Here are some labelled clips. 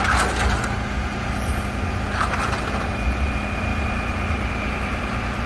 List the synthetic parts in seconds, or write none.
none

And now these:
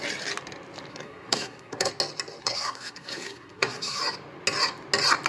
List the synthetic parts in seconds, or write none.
0.9-1.9 (codec, SNAC); 2.4-4.0